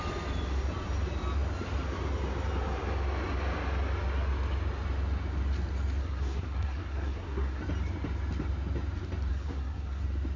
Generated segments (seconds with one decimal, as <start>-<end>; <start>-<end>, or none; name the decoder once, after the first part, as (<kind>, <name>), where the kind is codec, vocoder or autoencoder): 6.0-7.6 (codec, SNAC); 9.3-10.0